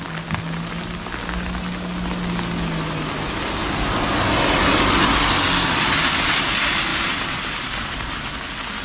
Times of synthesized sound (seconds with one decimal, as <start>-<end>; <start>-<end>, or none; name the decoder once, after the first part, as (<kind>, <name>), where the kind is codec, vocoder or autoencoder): 6.9-8.3 (vocoder, BigVGAN v2)